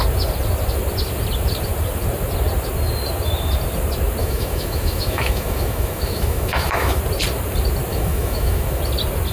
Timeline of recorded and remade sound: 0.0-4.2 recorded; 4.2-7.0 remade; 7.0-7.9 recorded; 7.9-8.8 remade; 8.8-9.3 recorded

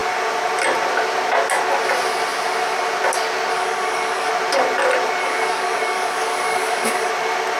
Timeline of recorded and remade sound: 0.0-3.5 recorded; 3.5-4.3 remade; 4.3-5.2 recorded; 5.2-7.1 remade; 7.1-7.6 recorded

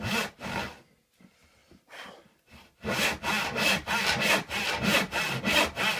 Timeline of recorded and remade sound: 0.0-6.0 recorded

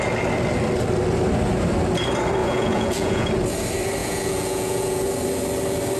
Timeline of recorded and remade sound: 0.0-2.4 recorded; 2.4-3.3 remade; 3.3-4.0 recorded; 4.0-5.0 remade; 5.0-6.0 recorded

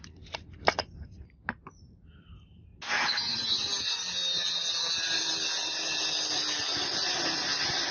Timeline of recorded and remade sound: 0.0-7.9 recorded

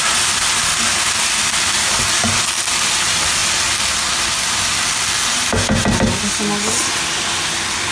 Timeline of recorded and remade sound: 0.0-7.9 recorded